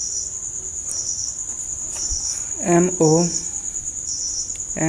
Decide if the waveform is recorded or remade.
recorded